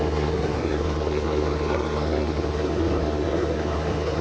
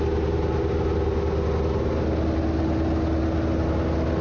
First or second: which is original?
second